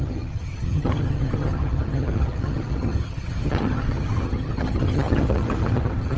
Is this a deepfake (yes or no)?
yes